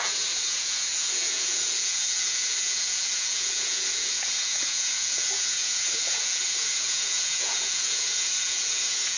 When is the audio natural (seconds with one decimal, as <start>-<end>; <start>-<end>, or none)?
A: none